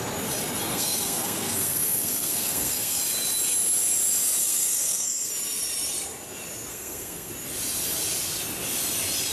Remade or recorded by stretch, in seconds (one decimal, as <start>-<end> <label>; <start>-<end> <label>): 0.0-0.7 recorded; 0.7-3.0 remade; 3.0-4.4 recorded; 4.4-5.3 remade; 5.3-6.7 recorded; 6.7-7.3 remade; 7.3-9.3 recorded